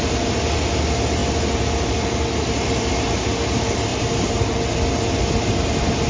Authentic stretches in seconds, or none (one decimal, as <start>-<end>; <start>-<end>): 0.0-6.1